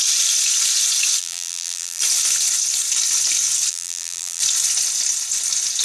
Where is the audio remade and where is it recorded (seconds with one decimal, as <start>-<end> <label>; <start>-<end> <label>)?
0.0-1.2 recorded; 1.2-2.0 remade; 2.0-3.7 recorded; 3.7-4.4 remade; 4.4-5.8 recorded